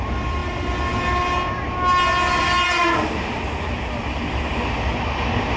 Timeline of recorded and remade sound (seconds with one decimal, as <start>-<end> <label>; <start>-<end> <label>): 0.0-5.6 recorded